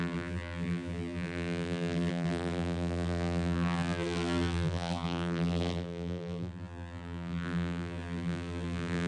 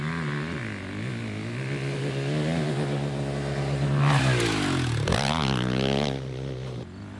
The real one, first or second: second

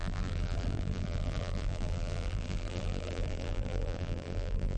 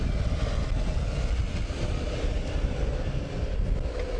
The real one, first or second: second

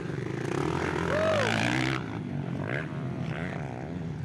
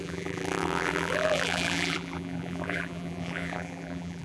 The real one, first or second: first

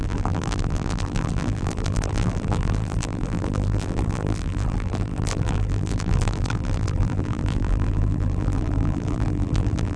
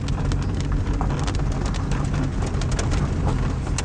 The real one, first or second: second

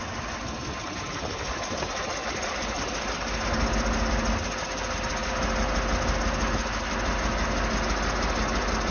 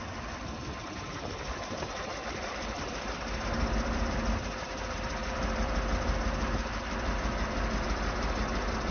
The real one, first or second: first